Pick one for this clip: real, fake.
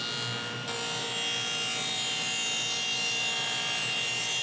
real